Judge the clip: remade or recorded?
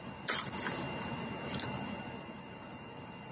recorded